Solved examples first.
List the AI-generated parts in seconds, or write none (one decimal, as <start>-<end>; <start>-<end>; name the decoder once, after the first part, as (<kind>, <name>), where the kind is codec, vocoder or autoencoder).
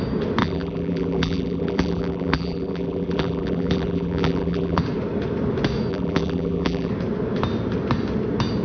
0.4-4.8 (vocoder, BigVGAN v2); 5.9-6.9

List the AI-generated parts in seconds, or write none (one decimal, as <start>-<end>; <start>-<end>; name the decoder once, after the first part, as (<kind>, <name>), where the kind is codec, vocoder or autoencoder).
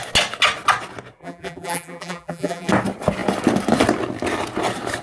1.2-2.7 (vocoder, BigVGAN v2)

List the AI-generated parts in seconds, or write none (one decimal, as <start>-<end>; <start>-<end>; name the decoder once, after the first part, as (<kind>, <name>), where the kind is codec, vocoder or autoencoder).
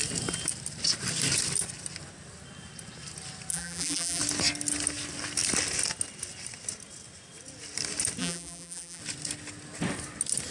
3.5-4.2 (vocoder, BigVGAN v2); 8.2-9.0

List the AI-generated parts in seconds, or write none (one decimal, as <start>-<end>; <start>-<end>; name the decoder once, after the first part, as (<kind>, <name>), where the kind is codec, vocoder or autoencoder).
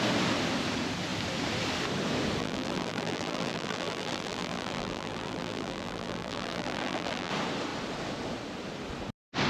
2.4-7.3 (vocoder, BigVGAN v2)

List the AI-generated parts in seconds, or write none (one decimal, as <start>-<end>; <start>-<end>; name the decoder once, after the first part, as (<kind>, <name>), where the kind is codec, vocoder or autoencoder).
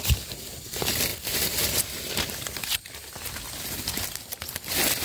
none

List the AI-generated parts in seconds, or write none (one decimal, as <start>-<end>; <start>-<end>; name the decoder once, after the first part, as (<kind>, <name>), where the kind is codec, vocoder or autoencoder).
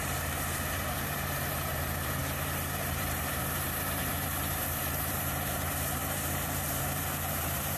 0.0-7.8 (vocoder, BigVGAN v2)